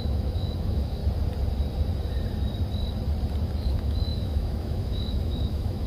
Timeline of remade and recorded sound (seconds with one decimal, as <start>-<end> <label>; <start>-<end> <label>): 0.0-1.0 remade; 1.0-3.6 recorded; 3.6-5.9 remade